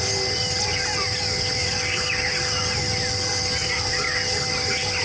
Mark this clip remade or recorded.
remade